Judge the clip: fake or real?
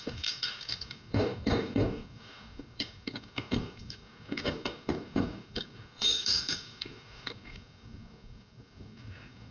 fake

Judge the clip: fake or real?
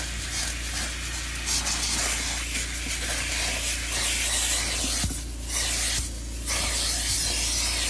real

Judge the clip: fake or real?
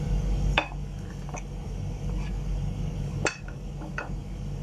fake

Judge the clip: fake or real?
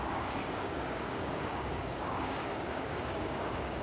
fake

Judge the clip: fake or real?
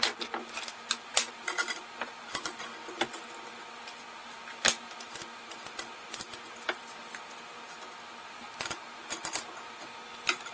real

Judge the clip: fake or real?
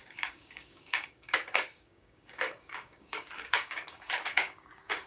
fake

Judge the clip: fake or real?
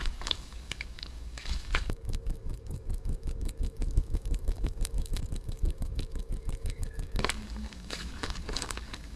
fake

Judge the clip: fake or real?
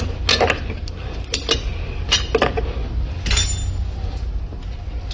real